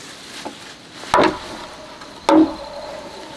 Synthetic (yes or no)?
no